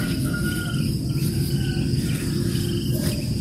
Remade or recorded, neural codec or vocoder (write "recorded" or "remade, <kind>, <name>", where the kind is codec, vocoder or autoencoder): recorded